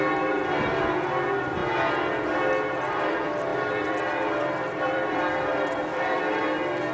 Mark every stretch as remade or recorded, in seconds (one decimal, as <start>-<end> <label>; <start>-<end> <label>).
0.0-3.5 recorded; 3.5-6.2 remade; 6.2-6.9 recorded